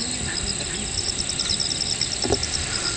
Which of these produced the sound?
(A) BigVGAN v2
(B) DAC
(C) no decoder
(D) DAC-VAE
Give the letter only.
C